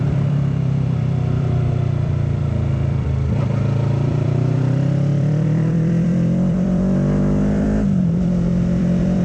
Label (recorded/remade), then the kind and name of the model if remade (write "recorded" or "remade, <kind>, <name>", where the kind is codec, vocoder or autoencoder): remade, vocoder, BigVGAN v2